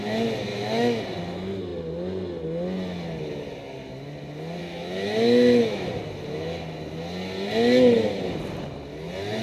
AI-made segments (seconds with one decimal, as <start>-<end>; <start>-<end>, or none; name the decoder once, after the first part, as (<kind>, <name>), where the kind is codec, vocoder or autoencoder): 0.5-1.0 (autoencoder, DAC-VAE); 4.6-5.9

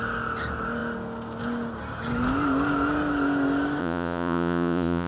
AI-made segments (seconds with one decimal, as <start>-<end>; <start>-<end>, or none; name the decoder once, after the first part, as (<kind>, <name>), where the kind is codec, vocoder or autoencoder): 3.8-5.1 (vocoder, Vocos)

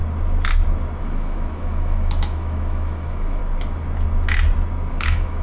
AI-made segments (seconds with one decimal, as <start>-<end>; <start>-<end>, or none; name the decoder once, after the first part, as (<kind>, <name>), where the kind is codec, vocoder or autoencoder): 1.0-3.4 (autoencoder, DAC-VAE); 4.9-5.4

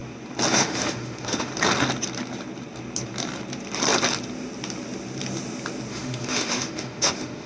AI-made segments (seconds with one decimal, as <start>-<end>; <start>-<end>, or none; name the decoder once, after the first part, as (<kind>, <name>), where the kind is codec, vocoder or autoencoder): 0.5-1.5 (autoencoder, DAC-VAE); 5.9-7.5

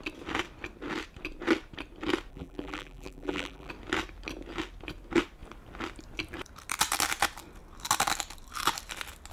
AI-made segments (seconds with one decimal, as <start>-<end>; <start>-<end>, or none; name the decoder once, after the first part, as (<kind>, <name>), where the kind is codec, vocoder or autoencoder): 2.3-3.7 (vocoder, BigVGAN v2)

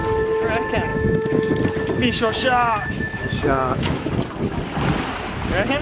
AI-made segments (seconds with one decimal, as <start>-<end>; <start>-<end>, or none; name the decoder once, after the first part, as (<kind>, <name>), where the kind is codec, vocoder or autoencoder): 0.9-1.5 (autoencoder, DAC-VAE); 2.0-4.1

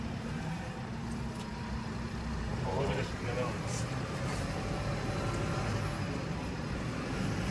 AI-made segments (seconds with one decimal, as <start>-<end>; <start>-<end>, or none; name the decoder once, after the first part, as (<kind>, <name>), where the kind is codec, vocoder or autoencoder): 0.0-7.5 (vocoder, BigVGAN v2)

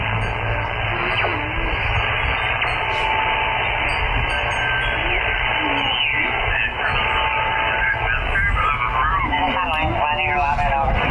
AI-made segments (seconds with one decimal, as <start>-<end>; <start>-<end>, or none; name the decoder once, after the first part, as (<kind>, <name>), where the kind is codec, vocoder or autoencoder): none